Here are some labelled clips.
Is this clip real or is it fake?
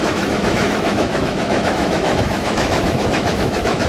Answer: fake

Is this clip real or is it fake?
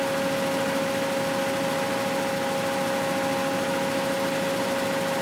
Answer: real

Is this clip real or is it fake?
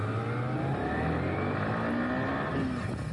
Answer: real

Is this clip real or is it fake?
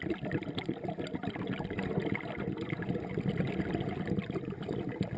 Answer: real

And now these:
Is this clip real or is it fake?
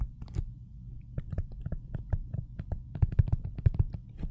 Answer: real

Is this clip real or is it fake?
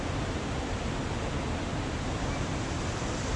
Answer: real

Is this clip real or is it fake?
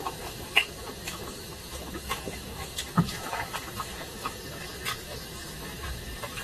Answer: fake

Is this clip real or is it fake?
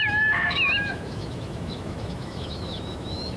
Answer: fake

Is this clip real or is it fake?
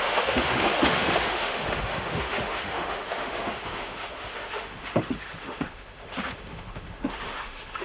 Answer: fake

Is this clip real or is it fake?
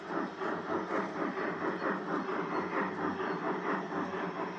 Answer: real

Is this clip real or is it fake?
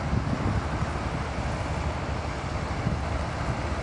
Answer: real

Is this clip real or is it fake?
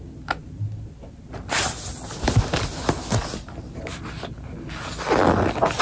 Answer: real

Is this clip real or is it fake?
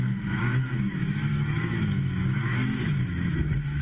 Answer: fake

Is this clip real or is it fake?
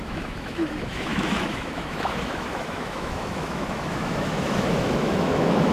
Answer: fake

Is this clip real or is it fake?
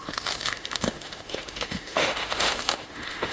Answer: fake